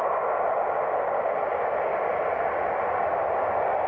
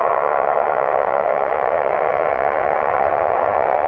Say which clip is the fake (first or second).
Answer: second